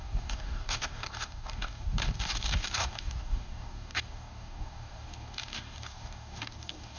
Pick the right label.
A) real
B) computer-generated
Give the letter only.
B